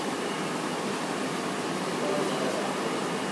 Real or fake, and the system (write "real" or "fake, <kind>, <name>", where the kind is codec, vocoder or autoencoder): real